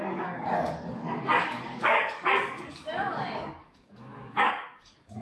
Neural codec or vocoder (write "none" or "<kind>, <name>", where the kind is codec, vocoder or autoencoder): codec, DAC